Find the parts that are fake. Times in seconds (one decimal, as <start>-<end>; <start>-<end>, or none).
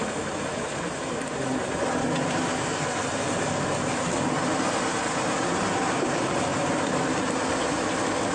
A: none